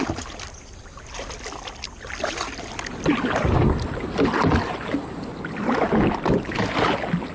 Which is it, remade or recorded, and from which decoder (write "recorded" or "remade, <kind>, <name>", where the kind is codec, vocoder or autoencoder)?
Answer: recorded